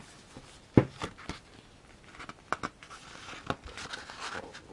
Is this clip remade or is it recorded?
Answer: recorded